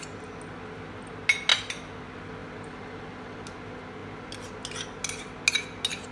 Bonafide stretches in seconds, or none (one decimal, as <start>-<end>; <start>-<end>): 0.0-6.1